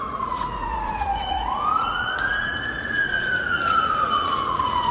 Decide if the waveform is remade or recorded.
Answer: remade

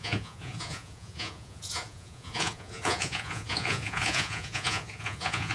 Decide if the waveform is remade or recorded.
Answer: remade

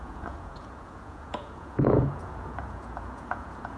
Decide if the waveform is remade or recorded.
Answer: remade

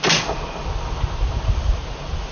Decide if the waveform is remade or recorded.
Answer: recorded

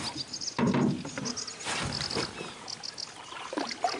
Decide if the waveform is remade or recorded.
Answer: recorded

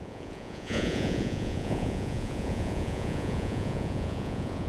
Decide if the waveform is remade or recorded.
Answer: remade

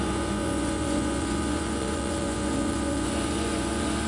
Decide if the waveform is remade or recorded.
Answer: remade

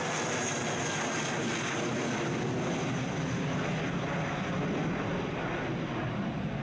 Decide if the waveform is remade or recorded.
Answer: recorded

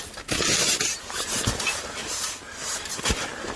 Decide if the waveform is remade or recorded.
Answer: recorded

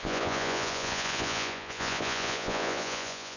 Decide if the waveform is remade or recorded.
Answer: remade